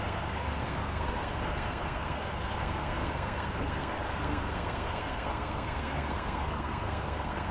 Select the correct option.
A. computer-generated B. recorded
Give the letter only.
A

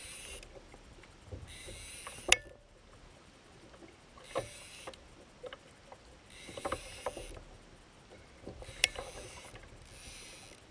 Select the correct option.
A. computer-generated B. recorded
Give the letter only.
B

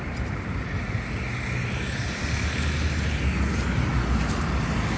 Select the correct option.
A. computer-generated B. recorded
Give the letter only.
B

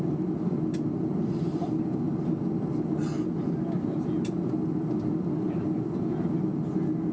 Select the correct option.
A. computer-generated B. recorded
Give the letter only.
B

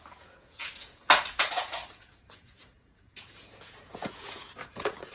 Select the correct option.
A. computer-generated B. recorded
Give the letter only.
A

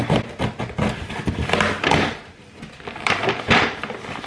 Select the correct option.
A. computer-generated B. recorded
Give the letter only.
B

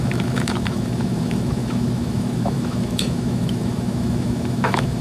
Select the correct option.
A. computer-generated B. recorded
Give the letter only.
A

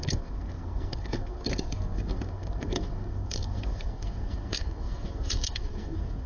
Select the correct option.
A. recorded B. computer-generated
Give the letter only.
B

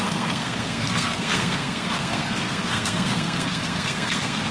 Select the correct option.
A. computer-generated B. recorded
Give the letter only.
A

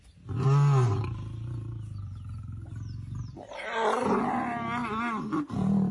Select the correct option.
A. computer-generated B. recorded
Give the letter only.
B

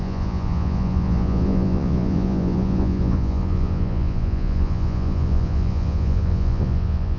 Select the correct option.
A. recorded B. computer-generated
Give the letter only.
B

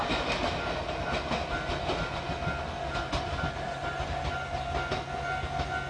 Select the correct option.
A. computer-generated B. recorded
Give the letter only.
B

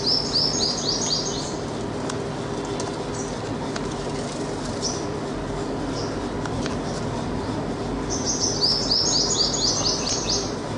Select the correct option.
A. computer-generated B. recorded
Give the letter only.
B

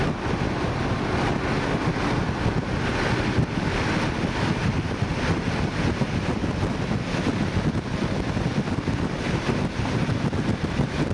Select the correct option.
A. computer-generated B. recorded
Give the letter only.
B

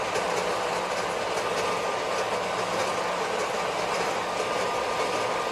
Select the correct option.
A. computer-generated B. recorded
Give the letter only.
B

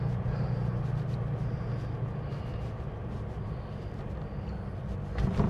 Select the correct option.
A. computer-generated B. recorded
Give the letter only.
B